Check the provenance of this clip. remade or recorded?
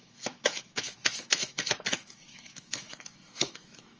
remade